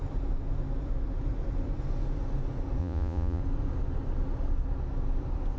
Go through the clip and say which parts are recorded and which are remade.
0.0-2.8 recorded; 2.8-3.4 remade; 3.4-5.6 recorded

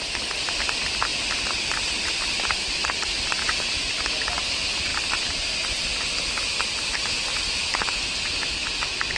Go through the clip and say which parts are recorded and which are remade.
0.0-9.2 recorded